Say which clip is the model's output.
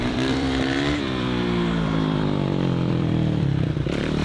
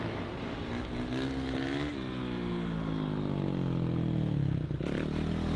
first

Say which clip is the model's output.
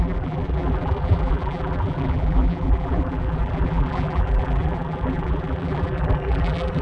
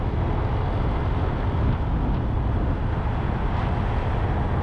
first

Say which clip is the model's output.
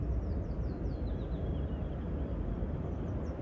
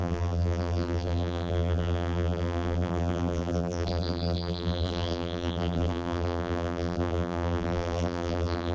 second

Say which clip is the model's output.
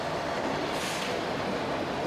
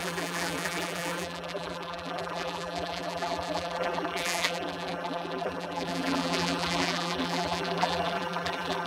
second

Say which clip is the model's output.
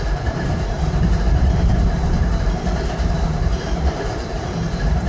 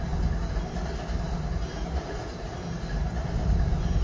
first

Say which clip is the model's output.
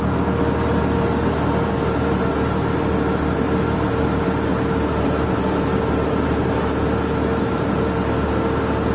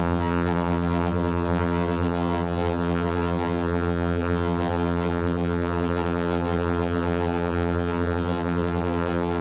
second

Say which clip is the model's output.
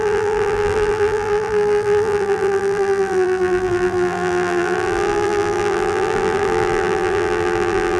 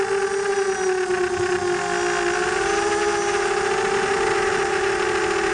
first